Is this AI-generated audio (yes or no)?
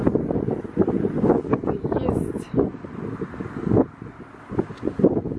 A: no